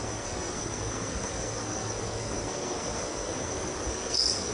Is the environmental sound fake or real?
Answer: fake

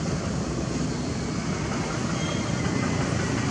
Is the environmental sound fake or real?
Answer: real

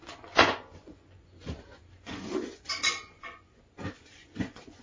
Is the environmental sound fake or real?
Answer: fake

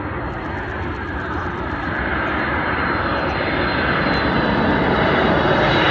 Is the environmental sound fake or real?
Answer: real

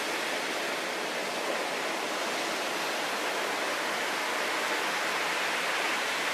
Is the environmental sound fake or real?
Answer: real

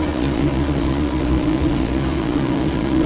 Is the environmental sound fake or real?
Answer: fake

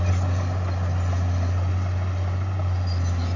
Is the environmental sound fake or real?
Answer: real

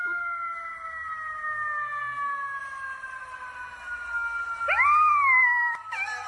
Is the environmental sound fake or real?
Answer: real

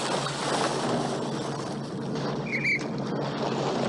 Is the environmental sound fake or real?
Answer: real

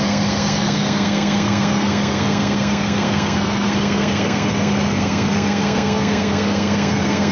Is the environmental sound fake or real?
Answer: fake